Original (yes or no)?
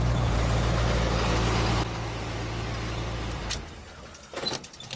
yes